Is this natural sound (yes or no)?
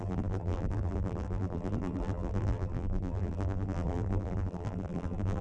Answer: no